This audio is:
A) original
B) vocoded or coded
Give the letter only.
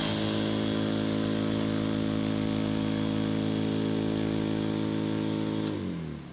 A